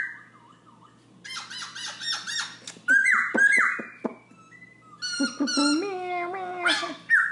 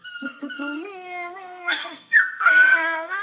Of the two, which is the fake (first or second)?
second